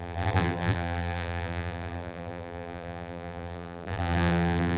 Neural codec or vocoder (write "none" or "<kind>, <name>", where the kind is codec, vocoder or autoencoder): vocoder, BigVGAN v2